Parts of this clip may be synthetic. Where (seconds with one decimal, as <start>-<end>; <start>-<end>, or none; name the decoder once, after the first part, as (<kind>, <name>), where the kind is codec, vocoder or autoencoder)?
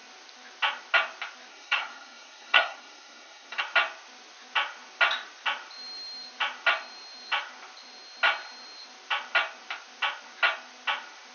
1.5-3.6 (codec, SNAC)